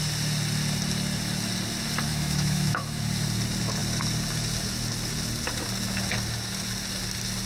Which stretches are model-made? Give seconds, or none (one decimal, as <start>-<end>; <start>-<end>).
2.1-3.0

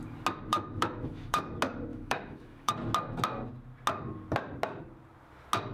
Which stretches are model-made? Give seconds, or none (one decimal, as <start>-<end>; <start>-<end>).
0.5-1.4; 1.9-2.7

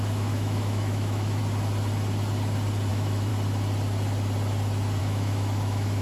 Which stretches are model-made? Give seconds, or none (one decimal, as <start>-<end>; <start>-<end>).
0.0-1.4; 2.9-3.3; 5.0-6.0

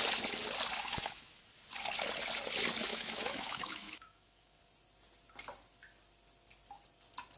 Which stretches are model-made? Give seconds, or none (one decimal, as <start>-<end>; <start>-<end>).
0.8-1.4; 2.9-4.6

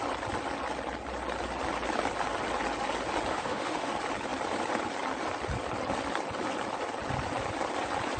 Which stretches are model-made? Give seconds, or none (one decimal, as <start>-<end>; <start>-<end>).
3.3-3.9

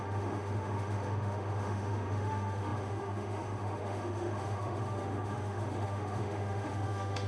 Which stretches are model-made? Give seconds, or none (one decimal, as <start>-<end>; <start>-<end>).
0.0-7.3

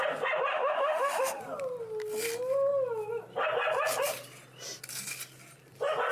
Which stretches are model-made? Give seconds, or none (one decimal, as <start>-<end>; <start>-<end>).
0.5-1.4